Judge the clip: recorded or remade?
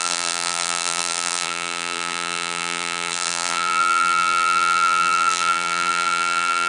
remade